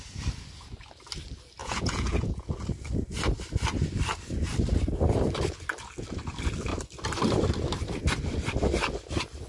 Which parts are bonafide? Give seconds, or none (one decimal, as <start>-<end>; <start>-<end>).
0.0-1.6; 2.5-9.5

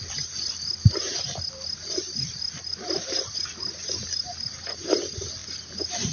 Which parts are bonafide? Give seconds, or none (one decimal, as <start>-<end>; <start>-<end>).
0.0-6.1